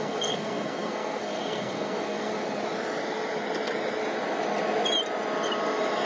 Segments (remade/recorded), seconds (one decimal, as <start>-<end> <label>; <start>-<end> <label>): 0.0-2.3 remade; 2.3-6.1 recorded